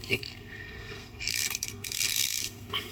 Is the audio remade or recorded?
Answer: remade